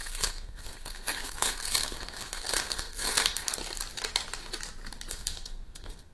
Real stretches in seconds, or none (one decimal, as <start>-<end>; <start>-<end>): 3.6-5.1